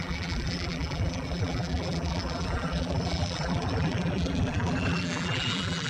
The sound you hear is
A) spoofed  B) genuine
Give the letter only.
A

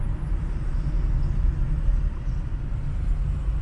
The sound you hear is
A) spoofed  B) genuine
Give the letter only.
B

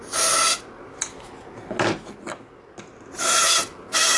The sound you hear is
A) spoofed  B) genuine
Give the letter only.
B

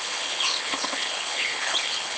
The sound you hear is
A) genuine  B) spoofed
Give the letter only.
B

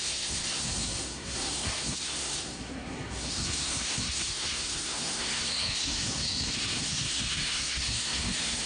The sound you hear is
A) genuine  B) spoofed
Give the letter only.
B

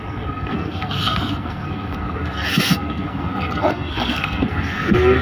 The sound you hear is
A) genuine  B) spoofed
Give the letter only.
B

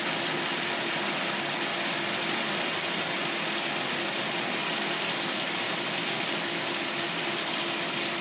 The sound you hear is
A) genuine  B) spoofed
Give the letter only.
A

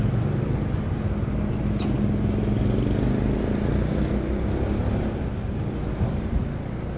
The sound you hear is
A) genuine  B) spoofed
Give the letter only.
A